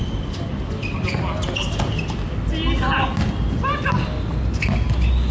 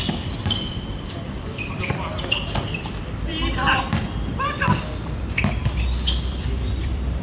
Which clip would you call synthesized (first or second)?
second